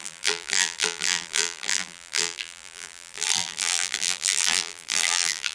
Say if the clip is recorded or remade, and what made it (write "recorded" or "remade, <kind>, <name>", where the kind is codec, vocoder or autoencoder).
remade, vocoder, BigVGAN v2